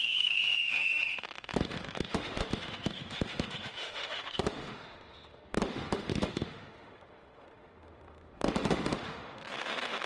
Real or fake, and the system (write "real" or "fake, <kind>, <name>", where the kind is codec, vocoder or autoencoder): fake, autoencoder, DAC-VAE